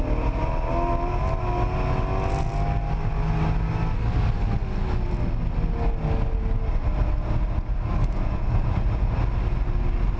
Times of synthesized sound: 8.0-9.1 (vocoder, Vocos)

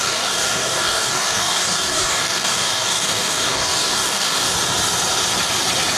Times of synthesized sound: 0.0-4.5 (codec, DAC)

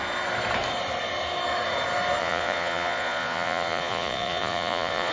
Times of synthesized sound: 2.2-5.1 (vocoder, Vocos)